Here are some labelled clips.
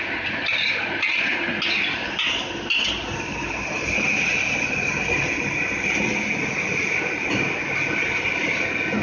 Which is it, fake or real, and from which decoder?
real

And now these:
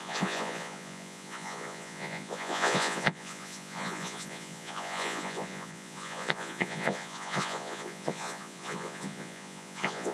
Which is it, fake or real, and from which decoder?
fake, vocoder, Vocos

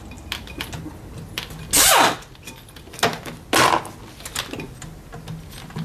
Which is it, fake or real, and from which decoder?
real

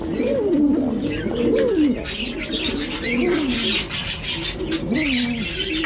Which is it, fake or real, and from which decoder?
real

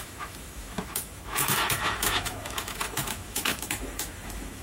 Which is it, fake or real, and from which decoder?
fake, autoencoder, DAC-VAE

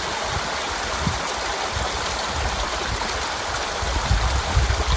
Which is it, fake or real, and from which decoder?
real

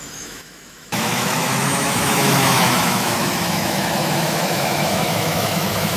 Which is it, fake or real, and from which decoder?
fake, autoencoder, DAC-VAE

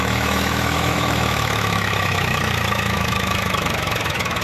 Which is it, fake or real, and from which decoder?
fake, autoencoder, DAC-VAE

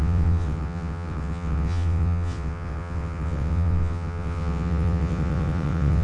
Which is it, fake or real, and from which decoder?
fake, vocoder, WaveNeXt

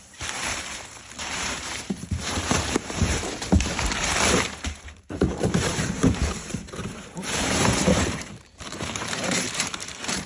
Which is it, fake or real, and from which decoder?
fake, vocoder, BigVGAN v2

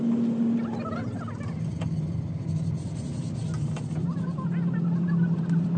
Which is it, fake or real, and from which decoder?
real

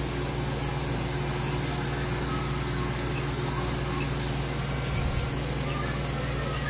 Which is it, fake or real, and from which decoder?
real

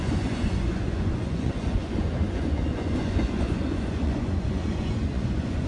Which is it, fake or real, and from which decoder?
fake, vocoder, Vocos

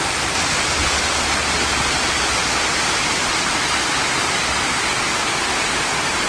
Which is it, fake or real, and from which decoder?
real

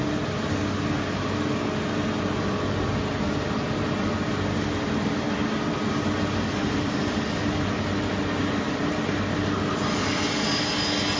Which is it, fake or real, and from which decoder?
real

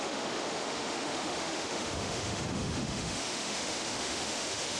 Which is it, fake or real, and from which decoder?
fake, autoencoder, DAC-VAE